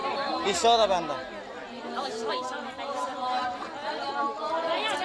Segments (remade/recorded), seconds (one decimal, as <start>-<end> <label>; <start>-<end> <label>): 0.0-5.0 recorded